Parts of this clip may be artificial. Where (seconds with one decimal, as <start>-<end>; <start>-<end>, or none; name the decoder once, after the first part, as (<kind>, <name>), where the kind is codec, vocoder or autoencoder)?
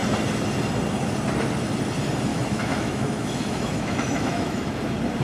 2.3-4.8 (autoencoder, DAC-VAE)